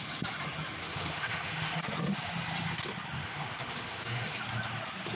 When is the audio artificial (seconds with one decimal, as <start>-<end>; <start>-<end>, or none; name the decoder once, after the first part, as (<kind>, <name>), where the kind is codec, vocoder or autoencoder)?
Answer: 0.8-1.9 (autoencoder, DAC-VAE); 3.2-4.4